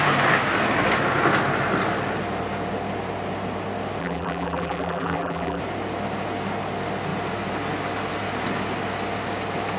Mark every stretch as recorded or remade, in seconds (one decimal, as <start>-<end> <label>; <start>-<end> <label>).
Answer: 0.0-4.0 recorded; 4.0-5.6 remade; 5.6-9.8 recorded